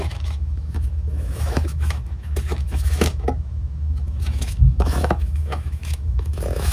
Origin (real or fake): fake